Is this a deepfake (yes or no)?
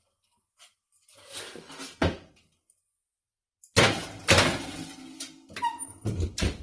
no